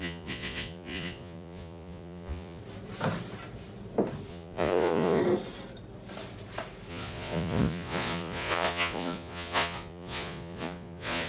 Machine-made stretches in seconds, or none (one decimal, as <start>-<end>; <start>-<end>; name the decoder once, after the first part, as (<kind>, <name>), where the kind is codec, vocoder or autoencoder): 0.0-2.6 (vocoder, Vocos); 4.3-5.2; 6.9-11.3